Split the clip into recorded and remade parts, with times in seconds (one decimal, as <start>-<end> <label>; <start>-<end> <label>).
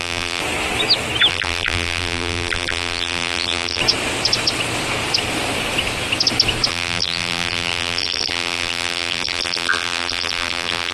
0.0-0.4 remade; 0.4-1.3 recorded; 1.3-3.8 remade; 3.8-6.7 recorded; 6.7-10.9 remade